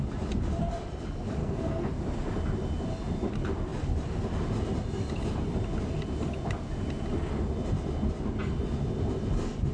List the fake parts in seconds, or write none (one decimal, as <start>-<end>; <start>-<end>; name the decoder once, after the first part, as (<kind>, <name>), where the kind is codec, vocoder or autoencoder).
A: 1.4-1.9 (codec, SNAC)